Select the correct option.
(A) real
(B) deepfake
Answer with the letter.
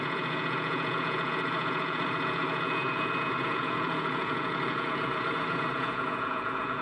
B